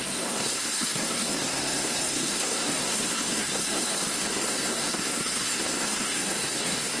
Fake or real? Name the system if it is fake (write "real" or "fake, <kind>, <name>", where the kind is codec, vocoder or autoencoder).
fake, codec, SNAC